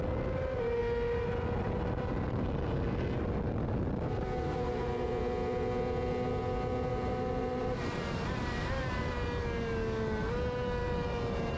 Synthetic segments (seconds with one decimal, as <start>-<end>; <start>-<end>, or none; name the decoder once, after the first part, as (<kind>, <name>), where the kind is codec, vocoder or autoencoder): 6.9-9.1 (vocoder, BigVGAN v2); 10.8-11.6